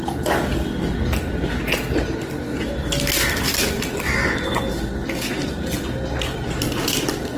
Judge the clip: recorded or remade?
recorded